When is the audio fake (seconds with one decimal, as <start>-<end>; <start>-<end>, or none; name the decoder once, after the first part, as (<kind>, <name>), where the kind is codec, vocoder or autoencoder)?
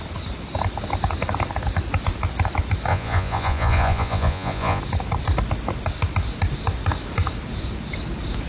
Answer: 2.9-4.8 (vocoder, Vocos)